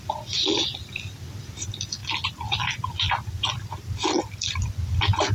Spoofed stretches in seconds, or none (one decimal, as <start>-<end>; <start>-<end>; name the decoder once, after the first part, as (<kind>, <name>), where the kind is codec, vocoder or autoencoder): none